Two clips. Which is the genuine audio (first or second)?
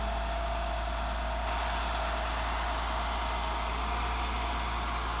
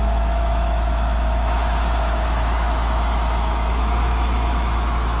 first